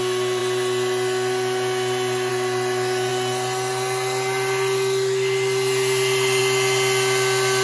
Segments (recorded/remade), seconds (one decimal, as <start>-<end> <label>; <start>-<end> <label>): 0.0-7.6 recorded